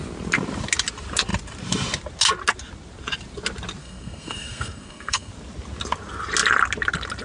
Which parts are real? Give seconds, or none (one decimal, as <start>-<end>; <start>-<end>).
0.0-3.8; 5.3-7.2